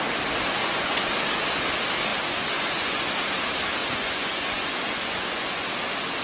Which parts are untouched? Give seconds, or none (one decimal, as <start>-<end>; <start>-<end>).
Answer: 0.0-0.6; 1.1-2.1; 3.1-3.8; 5.7-6.2